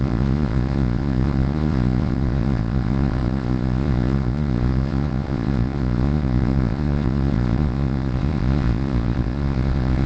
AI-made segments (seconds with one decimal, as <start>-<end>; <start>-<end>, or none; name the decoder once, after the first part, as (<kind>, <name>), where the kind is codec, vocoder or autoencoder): 0.0-10.1 (vocoder, Vocos)